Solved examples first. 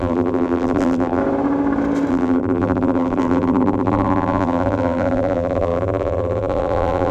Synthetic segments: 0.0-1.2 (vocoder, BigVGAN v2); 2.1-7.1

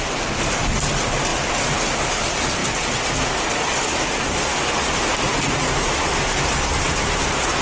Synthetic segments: none

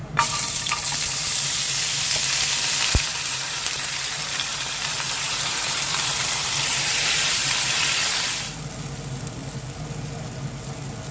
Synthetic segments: 0.0-0.7 (vocoder, BigVGAN v2); 3.1-7.4

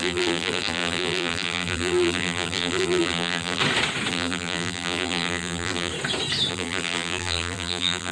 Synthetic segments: 0.0-3.6 (vocoder, BigVGAN v2); 4.1-5.9; 6.5-8.1

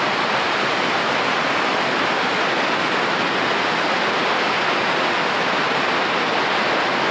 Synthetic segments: 2.3-3.2 (vocoder, BigVGAN v2)